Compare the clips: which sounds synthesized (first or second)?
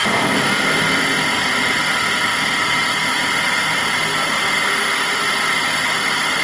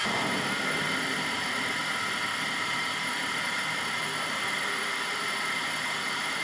second